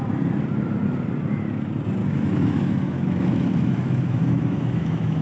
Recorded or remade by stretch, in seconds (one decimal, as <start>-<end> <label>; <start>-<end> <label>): 0.0-2.0 recorded; 2.0-5.2 remade